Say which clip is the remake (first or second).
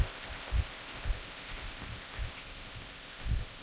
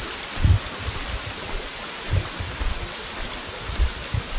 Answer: first